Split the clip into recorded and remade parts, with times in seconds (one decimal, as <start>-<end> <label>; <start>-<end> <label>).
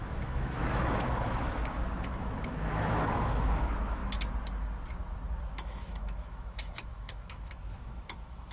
0.0-4.0 remade; 4.0-5.4 recorded; 5.4-8.5 remade